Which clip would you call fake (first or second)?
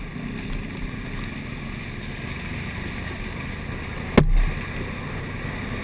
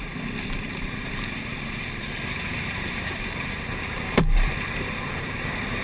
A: second